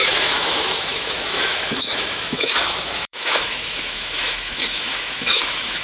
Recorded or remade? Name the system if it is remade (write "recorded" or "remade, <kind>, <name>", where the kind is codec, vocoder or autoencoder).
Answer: remade, autoencoder, DAC-VAE